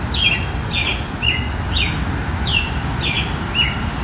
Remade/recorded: recorded